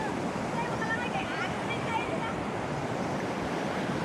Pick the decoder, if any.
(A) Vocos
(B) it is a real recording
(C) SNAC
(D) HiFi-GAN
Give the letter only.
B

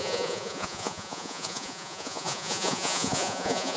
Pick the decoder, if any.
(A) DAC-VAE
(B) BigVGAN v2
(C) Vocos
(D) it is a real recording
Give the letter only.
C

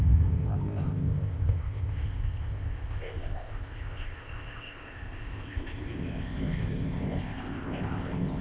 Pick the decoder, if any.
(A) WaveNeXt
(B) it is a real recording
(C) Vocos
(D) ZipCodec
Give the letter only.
D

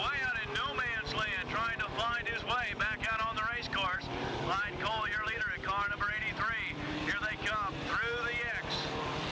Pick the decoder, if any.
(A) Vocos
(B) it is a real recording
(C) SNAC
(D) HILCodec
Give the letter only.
B